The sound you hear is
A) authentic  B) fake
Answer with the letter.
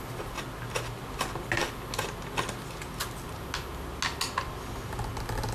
A